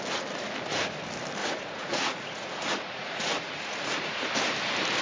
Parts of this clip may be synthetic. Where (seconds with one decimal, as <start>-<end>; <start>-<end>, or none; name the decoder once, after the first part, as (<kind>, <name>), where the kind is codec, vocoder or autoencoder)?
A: 1.4-4.3 (vocoder, Vocos)